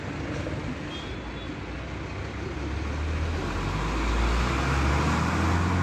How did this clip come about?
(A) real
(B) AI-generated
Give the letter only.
A